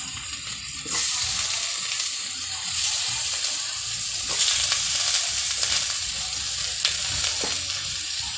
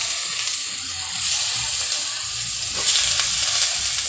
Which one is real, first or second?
second